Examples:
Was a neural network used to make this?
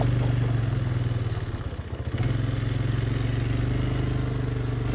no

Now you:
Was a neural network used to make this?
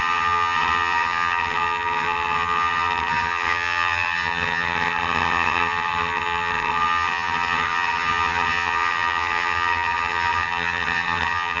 yes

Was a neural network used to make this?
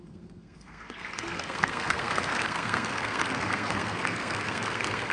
yes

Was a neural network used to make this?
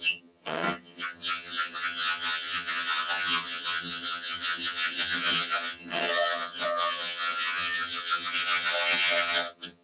yes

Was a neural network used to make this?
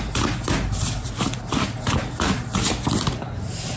no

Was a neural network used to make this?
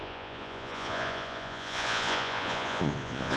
yes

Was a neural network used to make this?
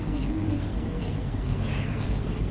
yes